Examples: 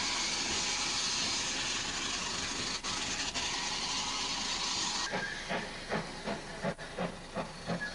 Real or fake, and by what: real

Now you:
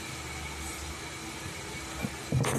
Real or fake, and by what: real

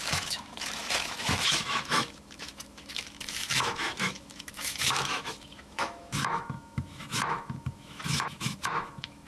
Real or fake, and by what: fake, autoencoder, DAC-VAE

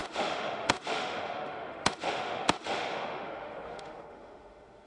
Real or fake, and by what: fake, autoencoder, DAC-VAE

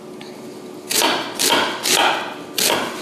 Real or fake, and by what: real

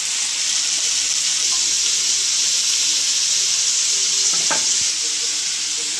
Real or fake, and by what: real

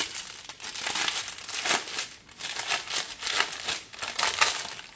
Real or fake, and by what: real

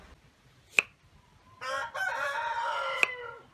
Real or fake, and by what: real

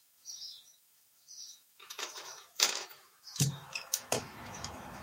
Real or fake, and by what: fake, autoencoder, DAC-VAE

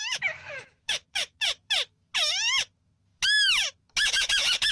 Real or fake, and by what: fake, autoencoder, DAC-VAE